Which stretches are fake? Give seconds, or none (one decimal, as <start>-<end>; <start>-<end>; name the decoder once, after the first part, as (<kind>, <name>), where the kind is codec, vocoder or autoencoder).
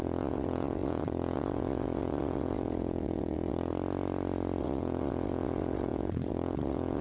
0.0-3.7 (vocoder, WaveNeXt); 4.6-7.0